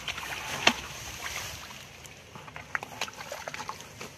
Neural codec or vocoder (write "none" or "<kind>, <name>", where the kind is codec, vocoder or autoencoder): none